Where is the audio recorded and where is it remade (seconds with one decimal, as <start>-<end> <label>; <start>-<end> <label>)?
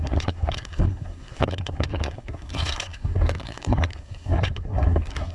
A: 0.0-5.3 remade